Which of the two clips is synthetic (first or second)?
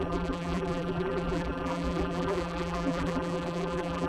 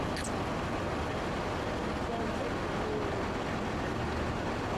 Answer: first